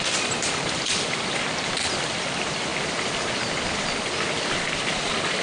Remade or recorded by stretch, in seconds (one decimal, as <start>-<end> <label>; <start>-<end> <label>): 0.0-5.4 remade